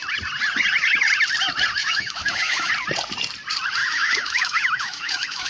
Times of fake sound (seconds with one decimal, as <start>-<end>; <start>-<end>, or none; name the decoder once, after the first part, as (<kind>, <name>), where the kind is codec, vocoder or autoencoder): 1.8-2.7 (autoencoder, DAC-VAE); 3.8-5.5